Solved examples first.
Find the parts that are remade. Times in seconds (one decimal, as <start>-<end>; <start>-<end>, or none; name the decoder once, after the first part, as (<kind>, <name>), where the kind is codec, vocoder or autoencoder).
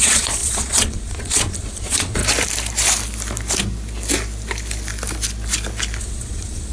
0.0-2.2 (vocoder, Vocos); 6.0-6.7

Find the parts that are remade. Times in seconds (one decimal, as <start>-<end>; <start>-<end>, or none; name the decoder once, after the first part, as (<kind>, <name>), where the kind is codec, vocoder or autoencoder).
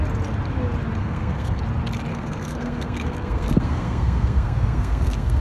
1.0-1.6 (codec, SNAC); 2.1-5.4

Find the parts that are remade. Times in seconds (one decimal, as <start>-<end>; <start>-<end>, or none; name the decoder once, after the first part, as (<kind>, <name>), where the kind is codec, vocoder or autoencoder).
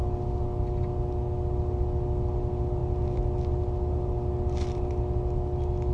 none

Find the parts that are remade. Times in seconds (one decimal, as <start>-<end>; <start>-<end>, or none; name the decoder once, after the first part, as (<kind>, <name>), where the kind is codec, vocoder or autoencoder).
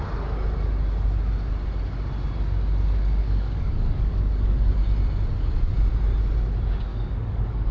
3.2-4.8 (codec, DAC); 6.9-7.7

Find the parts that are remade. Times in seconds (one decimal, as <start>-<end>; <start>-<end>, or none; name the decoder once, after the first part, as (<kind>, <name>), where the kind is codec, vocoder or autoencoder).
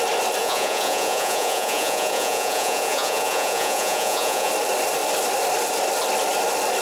0.4-4.5 (vocoder, Vocos)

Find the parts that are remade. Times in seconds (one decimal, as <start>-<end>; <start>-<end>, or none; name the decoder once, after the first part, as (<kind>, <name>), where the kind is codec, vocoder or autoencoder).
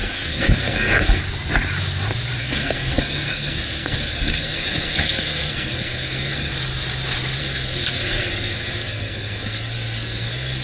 0.0-1.2 (codec, SNAC); 2.4-6.5; 7.4-10.6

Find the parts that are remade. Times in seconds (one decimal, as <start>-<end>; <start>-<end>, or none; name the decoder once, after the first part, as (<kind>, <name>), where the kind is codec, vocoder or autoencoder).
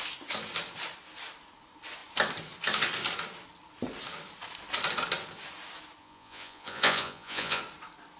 6.0-7.6 (vocoder, Vocos)